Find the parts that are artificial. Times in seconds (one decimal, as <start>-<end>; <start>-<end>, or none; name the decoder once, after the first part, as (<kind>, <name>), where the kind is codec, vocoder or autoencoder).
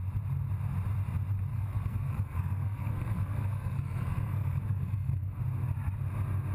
1.5-5.4 (codec, SNAC)